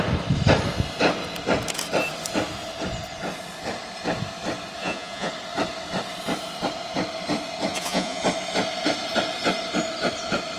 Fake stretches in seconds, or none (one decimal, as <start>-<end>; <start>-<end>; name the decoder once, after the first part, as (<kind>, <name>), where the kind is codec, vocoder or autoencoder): 4.8-5.3 (vocoder, Vocos); 7.7-8.2